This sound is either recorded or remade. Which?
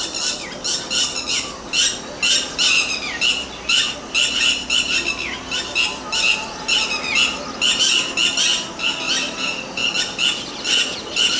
recorded